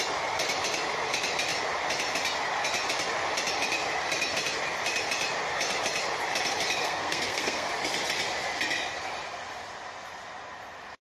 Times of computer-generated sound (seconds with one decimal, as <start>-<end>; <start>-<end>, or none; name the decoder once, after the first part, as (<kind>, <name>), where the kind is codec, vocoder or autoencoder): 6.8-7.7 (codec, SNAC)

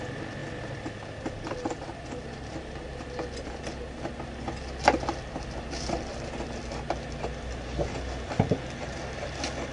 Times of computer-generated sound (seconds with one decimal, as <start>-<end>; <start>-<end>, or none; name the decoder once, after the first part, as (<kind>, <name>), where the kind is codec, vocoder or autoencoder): none

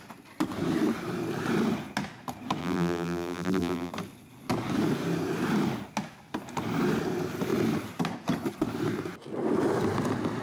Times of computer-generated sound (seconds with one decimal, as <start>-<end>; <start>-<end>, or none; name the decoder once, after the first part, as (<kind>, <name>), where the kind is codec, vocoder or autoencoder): 2.6-3.9 (vocoder, BigVGAN v2)